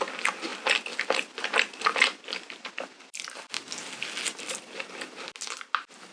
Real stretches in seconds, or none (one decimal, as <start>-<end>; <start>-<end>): 0.0-6.1